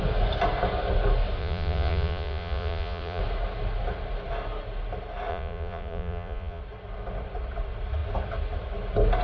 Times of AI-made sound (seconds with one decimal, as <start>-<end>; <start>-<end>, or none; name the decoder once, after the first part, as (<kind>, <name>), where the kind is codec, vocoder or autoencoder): 1.4-3.2 (vocoder, Vocos); 5.3-6.6